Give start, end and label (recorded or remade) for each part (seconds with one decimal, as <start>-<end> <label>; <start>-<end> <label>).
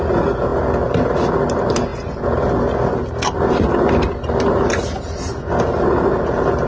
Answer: 0.0-6.7 recorded